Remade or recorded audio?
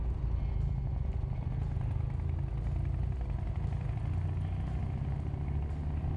recorded